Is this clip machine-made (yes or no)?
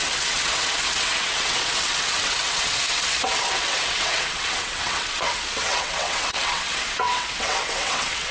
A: yes